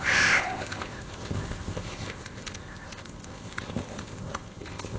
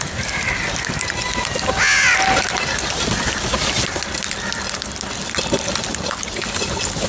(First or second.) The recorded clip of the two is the second